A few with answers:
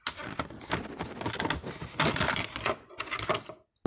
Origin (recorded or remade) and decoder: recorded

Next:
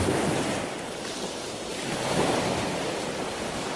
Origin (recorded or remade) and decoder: recorded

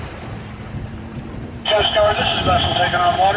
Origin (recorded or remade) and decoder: remade, vocoder, BigVGAN v2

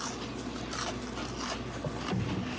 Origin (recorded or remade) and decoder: recorded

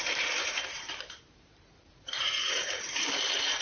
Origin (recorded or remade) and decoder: remade, vocoder, BigVGAN v2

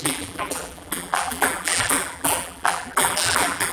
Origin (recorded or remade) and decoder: remade, vocoder, BigVGAN v2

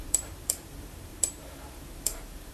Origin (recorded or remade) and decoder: remade, vocoder, BigVGAN v2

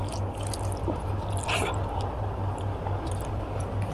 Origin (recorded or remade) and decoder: recorded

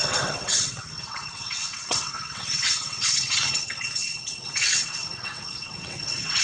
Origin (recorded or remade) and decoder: remade, vocoder, WaveNeXt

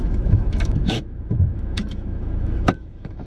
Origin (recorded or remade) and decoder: remade, autoencoder, DAC-VAE